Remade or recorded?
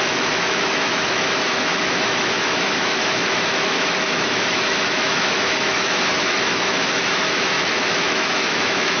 remade